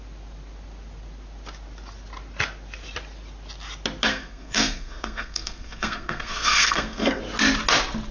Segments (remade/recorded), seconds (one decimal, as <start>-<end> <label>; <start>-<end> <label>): 0.0-4.1 recorded; 4.1-7.2 remade; 7.2-8.1 recorded